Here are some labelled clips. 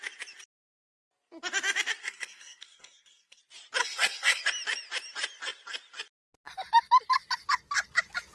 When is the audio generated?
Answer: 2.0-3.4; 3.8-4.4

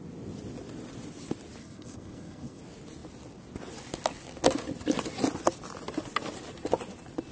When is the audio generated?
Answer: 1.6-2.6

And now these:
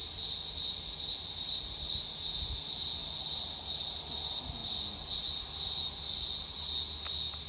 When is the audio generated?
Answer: none

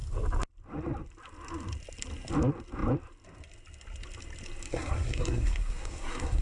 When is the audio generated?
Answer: 4.7-6.4

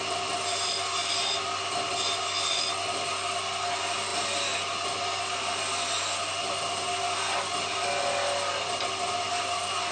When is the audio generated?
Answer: none

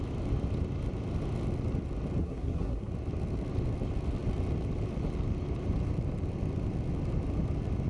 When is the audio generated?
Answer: 2.2-2.9